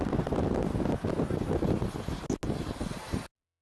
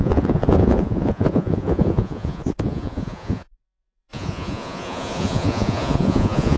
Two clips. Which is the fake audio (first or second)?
second